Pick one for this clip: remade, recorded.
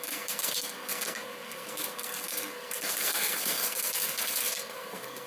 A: remade